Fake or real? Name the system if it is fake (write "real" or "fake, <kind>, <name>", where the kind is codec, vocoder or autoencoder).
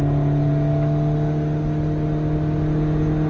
real